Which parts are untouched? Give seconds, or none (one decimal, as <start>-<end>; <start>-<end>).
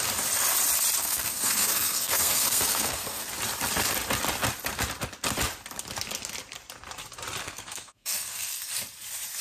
0.0-1.0; 3.3-7.4; 8.7-9.4